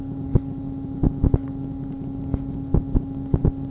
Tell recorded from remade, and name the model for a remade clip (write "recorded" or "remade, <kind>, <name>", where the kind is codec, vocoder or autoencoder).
recorded